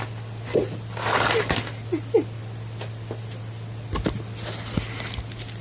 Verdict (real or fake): real